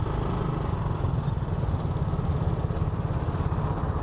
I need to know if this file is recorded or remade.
recorded